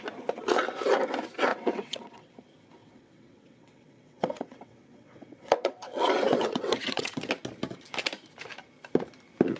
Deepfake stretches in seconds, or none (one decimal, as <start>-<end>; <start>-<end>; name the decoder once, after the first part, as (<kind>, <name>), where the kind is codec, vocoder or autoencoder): 1.5-2.3 (vocoder, WaveNeXt); 2.8-7.3